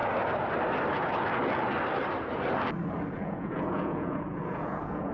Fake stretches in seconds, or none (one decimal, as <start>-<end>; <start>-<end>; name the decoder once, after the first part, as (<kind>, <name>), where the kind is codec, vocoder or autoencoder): 3.1-5.1 (vocoder, Vocos)